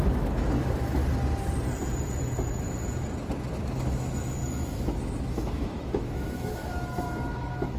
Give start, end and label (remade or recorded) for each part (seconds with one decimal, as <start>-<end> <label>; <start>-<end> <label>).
0.0-1.0 remade; 1.0-3.5 recorded; 3.5-7.8 remade